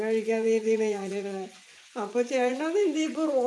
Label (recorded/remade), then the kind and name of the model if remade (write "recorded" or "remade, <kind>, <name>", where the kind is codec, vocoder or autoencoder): remade, vocoder, Vocos